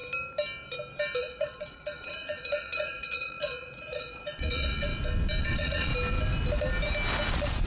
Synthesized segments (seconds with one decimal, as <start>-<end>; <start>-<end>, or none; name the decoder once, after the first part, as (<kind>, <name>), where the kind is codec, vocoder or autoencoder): 1.2-4.9 (vocoder, Vocos); 5.4-5.9; 7.3-7.7